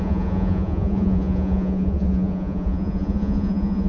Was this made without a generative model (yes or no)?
no